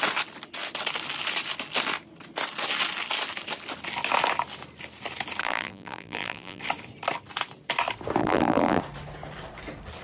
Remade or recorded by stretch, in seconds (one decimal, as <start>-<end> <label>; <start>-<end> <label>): 0.0-5.4 recorded; 5.4-6.6 remade; 6.6-8.2 recorded; 8.2-8.8 remade; 8.8-10.0 recorded